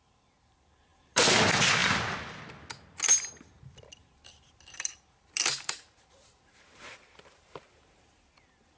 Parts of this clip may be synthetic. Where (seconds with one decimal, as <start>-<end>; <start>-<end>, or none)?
0.9-1.4; 4.0-8.3